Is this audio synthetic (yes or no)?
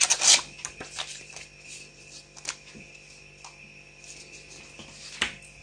no